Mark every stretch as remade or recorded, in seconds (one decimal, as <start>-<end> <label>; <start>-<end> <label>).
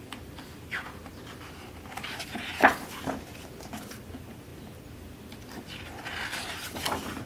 0.0-7.3 recorded